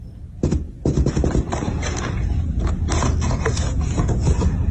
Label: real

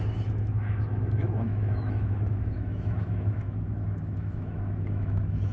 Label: fake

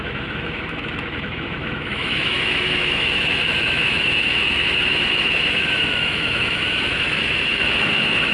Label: fake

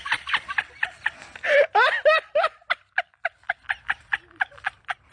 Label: real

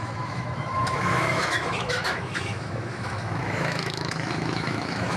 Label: fake